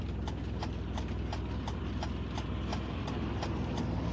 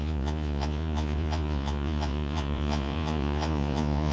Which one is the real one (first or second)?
first